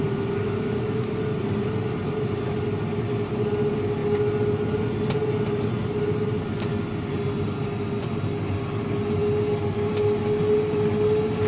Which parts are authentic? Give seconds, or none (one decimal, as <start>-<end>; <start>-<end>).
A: 0.0-0.4; 1.2-11.5